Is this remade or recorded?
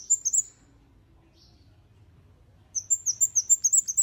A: recorded